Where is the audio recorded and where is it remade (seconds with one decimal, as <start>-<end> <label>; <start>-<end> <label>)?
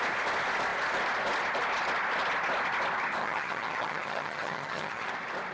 0.0-3.2 recorded; 3.2-5.1 remade; 5.1-5.5 recorded